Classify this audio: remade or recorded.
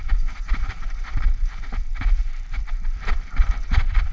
remade